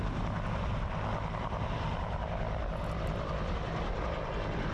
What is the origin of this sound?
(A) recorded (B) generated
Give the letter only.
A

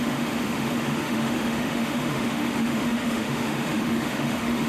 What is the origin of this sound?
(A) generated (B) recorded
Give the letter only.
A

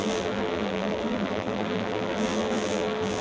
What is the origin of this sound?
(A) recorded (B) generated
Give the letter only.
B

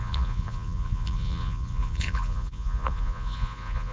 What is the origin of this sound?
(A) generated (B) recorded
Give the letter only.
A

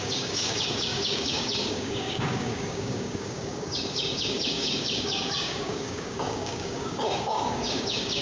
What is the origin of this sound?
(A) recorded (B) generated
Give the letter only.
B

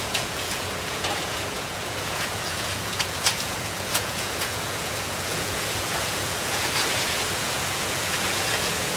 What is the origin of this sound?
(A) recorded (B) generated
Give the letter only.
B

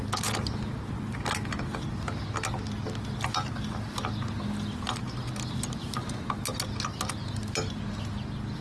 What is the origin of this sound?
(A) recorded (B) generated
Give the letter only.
A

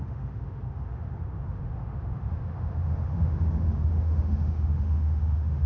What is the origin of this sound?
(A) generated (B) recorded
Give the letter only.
A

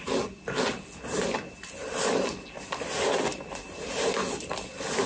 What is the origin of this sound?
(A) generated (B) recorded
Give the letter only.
A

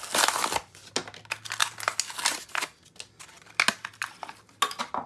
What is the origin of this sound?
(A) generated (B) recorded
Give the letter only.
B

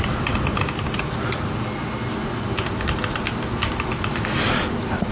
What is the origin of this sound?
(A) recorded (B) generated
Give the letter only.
A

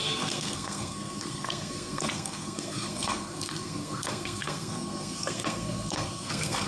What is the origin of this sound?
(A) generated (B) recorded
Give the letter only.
A